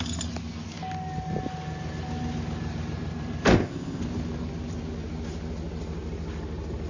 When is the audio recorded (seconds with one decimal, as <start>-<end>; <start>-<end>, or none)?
0.0-3.5; 4.0-6.9